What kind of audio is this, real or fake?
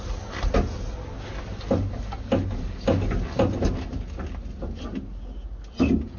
real